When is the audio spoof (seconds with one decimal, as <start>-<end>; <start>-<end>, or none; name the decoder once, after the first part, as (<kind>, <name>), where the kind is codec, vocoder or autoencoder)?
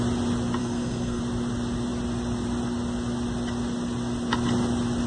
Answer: 0.6-1.2 (codec, SNAC)